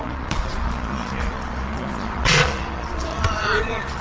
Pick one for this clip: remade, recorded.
remade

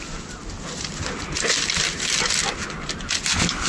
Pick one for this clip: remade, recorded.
recorded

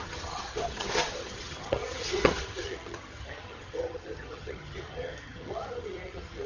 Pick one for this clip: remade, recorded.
remade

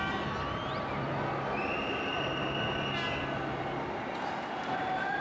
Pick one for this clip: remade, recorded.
recorded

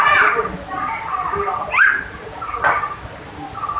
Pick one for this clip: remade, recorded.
recorded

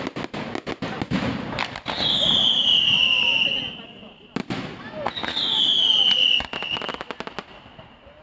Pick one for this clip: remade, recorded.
recorded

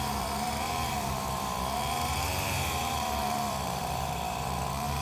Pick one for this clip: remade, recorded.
remade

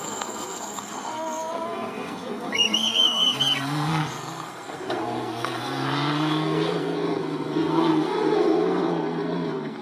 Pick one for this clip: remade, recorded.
remade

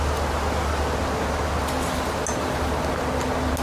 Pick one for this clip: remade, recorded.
recorded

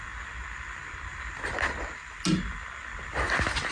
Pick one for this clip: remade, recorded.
recorded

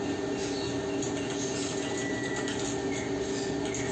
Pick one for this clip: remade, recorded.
remade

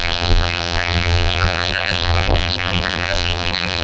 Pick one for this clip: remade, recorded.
remade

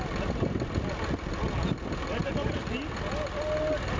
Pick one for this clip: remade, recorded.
recorded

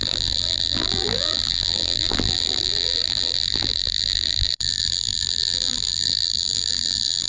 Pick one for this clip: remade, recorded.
remade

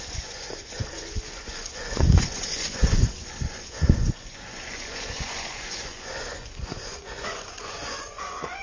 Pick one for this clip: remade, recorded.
remade